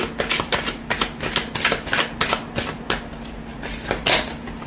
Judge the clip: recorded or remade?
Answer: recorded